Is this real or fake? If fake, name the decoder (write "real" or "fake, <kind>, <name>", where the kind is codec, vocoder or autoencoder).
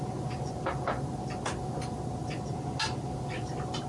real